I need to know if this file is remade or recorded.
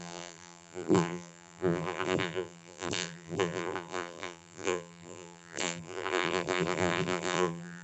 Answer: remade